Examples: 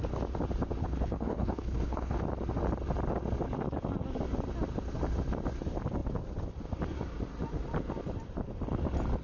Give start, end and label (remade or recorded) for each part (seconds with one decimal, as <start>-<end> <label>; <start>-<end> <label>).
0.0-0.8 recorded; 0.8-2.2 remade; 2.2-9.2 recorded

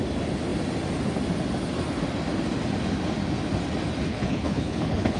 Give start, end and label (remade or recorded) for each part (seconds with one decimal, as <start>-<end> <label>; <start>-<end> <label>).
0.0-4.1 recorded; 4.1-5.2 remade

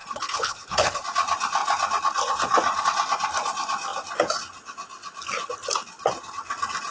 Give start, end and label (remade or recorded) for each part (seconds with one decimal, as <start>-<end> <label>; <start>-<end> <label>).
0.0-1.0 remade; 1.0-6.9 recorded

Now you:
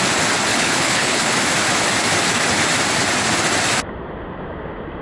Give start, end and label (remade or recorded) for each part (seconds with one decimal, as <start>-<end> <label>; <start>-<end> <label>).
0.0-0.5 recorded; 0.5-1.3 remade; 1.3-5.0 recorded

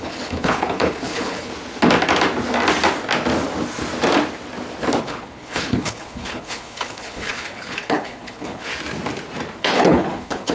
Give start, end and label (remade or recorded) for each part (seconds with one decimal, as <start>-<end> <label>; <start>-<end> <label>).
0.0-1.5 remade; 1.5-5.0 recorded; 5.0-8.7 remade; 8.7-9.6 recorded; 9.6-10.5 remade